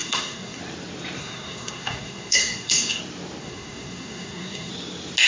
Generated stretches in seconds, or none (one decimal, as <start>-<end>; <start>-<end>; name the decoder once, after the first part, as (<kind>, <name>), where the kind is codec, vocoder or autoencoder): 0.0-0.6 (codec, SNAC); 1.2-3.0; 3.4-4.7